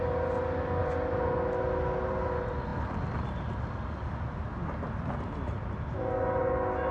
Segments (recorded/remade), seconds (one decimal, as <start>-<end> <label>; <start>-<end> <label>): 0.0-6.9 recorded